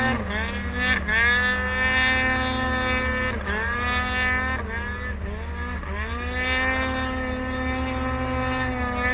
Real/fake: real